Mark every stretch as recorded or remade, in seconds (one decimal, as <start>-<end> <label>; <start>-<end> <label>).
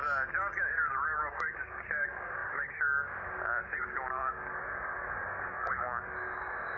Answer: 0.0-0.7 recorded; 0.7-6.8 remade